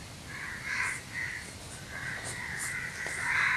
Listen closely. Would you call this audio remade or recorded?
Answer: recorded